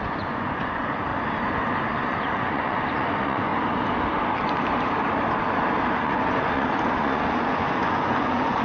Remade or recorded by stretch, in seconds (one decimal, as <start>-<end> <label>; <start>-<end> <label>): 0.0-1.1 remade; 1.1-1.9 recorded; 1.9-3.5 remade; 3.5-5.9 recorded; 5.9-8.6 remade